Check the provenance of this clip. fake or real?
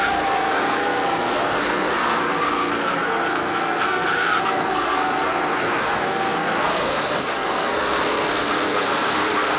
fake